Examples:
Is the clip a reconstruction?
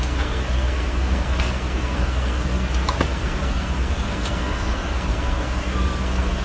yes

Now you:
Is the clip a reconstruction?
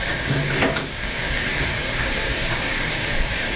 yes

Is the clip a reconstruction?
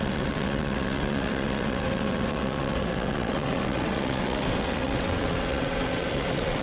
yes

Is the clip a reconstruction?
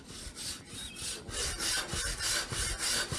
no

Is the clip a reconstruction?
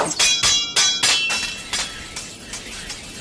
no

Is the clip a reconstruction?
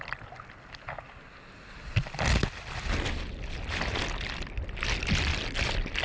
no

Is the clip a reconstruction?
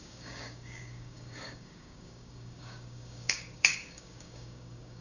yes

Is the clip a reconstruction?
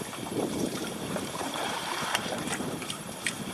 yes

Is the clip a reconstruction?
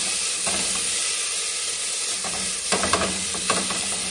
no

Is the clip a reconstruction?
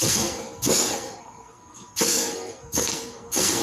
yes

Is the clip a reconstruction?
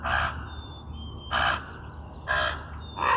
no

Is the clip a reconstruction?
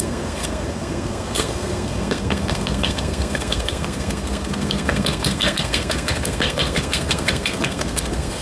yes